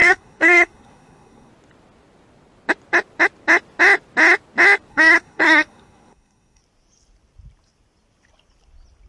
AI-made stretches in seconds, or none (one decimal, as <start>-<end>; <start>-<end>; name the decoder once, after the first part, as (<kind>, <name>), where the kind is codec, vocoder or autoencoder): 0.0-1.5 (codec, SNAC); 4.9-6.6